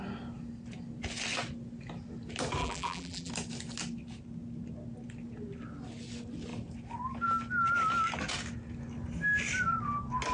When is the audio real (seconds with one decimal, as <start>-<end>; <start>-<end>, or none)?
0.0-2.6; 3.3-10.3

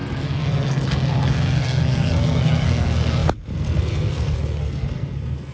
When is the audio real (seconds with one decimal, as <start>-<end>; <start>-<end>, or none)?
none

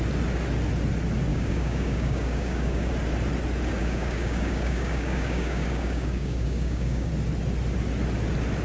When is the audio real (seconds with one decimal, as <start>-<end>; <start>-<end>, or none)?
0.0-1.3; 2.9-3.8; 7.1-8.6

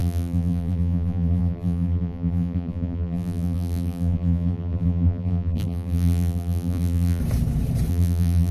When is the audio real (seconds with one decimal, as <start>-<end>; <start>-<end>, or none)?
7.2-7.9

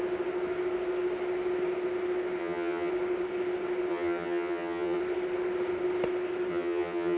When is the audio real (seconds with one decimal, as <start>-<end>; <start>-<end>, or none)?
0.0-2.4; 2.9-3.9; 5.0-6.5

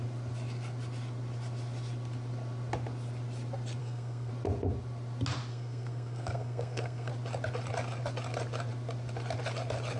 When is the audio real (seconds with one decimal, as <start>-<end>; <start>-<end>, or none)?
0.0-3.8; 4.3-5.5; 7.1-10.0

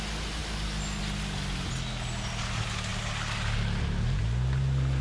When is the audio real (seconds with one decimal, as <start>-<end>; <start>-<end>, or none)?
0.0-5.0

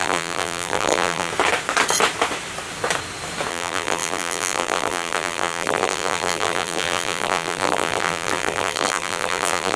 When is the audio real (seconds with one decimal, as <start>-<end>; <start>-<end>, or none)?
1.3-3.5